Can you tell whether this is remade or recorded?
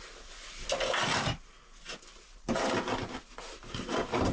recorded